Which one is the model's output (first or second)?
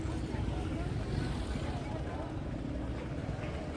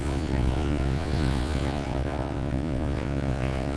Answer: second